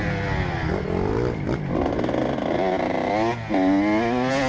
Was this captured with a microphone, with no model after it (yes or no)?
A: yes